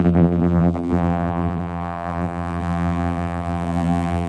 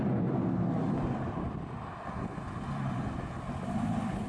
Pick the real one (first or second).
second